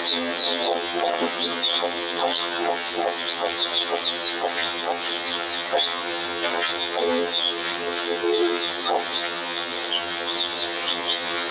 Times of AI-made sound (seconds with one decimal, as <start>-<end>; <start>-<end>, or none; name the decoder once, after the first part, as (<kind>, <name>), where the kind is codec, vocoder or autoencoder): 0.0-11.5 (vocoder, HiFi-GAN)